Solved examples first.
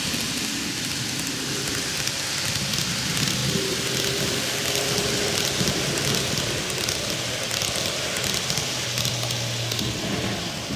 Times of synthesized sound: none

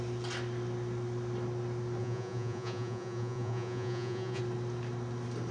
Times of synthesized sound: 2.0-4.4 (vocoder, Vocos)

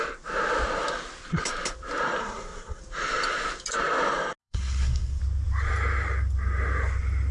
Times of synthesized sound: 2.2-2.8 (codec, SNAC); 4.4-5.2

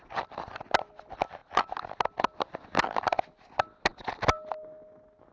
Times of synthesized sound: none